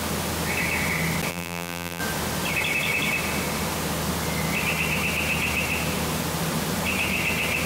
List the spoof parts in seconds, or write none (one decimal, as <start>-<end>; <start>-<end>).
1.3-2.0